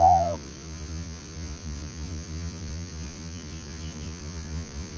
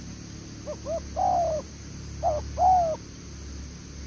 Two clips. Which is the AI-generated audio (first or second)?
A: first